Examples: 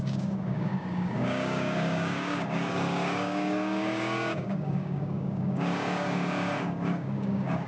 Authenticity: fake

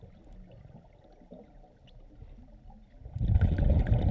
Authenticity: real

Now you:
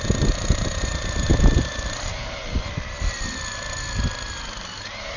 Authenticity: fake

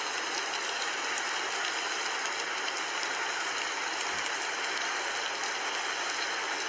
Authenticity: real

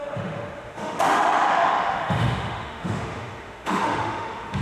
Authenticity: fake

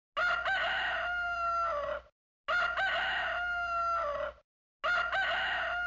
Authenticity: real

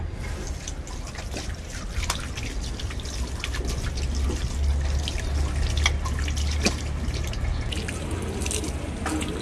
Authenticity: real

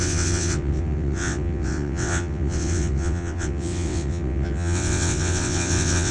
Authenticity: fake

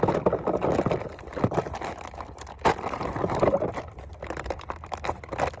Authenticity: real